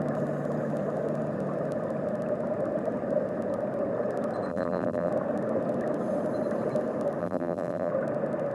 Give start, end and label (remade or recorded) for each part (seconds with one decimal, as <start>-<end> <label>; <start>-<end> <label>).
0.0-4.5 recorded; 4.5-5.1 remade; 5.1-7.2 recorded; 7.2-7.9 remade; 7.9-8.5 recorded